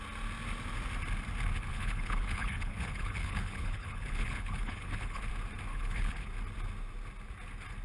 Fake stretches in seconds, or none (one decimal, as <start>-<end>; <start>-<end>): 1.7-5.3; 5.7-6.3